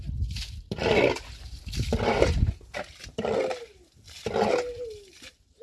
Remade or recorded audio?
recorded